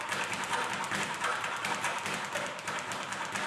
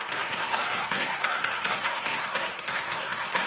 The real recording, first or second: first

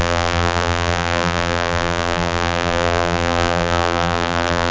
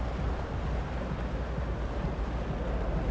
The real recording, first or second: second